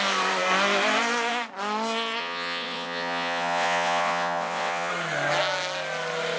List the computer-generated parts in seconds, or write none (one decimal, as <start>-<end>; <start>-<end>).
2.2-4.9